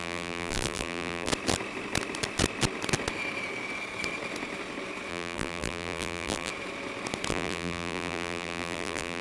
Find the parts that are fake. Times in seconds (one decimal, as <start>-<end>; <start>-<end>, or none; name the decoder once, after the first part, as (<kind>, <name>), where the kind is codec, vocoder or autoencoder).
0.0-1.3 (vocoder, BigVGAN v2); 5.1-6.5; 7.3-9.2